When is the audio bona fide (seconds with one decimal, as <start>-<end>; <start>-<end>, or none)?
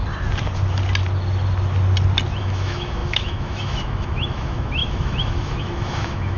0.0-2.4